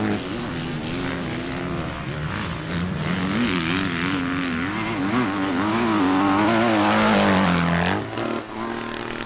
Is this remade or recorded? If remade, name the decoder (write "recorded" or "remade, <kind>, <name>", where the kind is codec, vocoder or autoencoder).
recorded